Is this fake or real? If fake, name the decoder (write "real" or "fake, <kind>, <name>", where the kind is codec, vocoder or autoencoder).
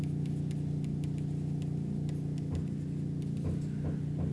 real